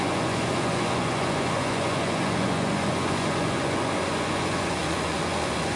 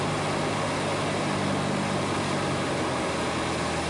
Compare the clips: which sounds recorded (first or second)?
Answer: second